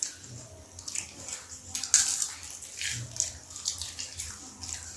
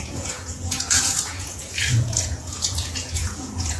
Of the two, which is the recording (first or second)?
first